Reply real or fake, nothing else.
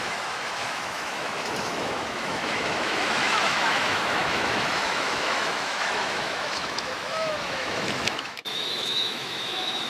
fake